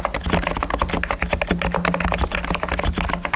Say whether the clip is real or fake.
real